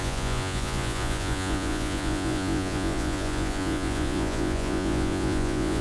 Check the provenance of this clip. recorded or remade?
remade